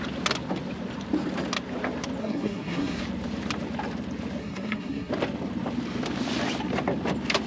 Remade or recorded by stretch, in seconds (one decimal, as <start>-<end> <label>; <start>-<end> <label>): 0.0-2.2 recorded; 2.2-3.0 remade; 3.0-4.4 recorded; 4.4-5.1 remade; 5.1-7.5 recorded